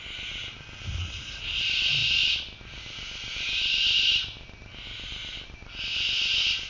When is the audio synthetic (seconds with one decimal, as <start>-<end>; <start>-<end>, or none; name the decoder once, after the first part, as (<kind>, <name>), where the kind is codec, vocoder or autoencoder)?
1.0-1.6 (codec, SNAC)